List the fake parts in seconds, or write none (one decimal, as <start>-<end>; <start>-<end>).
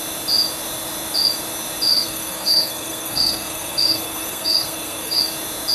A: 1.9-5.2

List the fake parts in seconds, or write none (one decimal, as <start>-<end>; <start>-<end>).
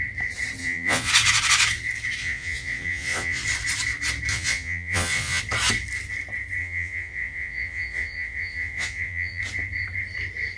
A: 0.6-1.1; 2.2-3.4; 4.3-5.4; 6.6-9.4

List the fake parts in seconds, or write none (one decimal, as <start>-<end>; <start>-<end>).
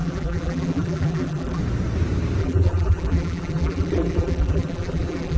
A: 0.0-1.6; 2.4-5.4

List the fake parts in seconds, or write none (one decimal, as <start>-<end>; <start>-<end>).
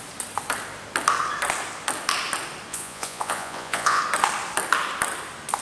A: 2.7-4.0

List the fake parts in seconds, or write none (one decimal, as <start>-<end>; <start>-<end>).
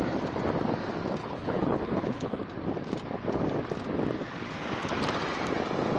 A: 1.2-2.4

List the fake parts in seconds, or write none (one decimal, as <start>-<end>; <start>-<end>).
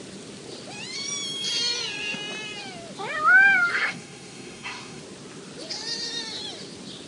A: 3.7-5.0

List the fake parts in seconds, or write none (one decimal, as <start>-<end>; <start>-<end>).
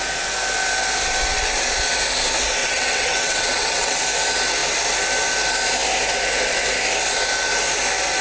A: 2.6-4.0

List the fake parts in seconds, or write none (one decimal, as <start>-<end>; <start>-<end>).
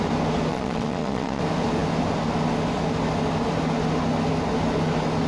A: 0.5-1.4